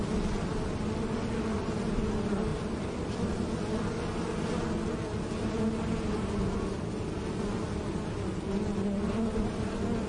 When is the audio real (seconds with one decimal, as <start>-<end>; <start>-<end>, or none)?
0.0-2.5; 3.5-10.1

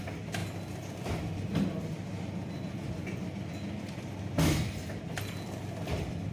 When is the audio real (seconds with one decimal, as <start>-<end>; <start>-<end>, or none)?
0.4-1.0